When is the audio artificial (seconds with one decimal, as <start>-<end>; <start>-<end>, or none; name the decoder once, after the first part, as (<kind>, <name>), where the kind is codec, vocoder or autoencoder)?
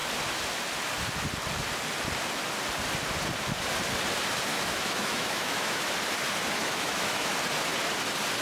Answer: 4.5-5.9 (autoencoder, DAC-VAE); 6.6-7.3